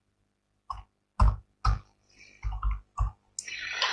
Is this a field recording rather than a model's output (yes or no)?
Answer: yes